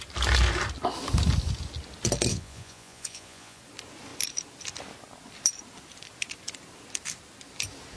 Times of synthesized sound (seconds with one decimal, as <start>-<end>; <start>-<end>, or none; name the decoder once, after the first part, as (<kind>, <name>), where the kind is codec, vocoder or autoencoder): 2.3-3.6 (vocoder, Vocos)